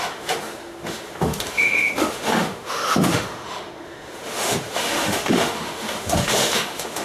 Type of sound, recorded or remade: remade